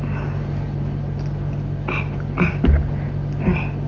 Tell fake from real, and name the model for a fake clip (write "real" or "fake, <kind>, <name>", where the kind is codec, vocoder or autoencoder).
real